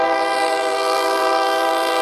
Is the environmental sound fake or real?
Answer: fake